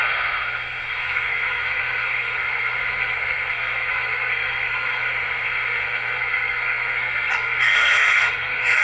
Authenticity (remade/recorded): remade